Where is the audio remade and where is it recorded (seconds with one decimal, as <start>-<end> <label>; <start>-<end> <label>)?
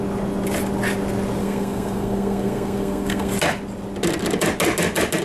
0.0-1.4 recorded; 1.4-3.3 remade; 3.3-5.2 recorded